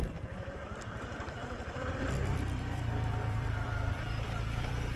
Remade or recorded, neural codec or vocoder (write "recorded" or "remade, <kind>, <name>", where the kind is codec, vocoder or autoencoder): remade, vocoder, BigVGAN v2